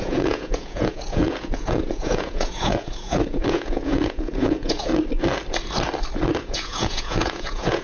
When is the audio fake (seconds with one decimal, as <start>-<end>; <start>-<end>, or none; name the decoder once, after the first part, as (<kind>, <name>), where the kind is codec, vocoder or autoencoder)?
0.0-4.9 (vocoder, Vocos); 6.4-7.8